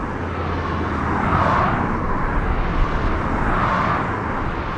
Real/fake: real